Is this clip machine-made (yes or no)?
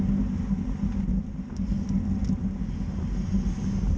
no